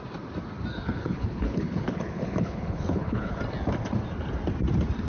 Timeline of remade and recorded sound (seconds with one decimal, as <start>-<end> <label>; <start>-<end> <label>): 0.0-0.7 recorded; 0.7-3.4 remade; 3.4-5.1 recorded